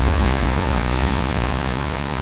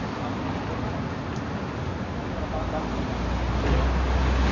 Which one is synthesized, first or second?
first